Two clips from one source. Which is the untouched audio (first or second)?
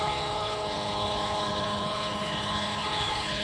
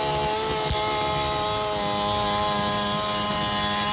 second